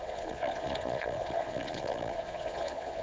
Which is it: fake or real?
fake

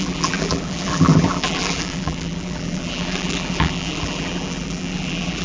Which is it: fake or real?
fake